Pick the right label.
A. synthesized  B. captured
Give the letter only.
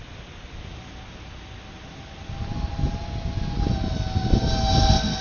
B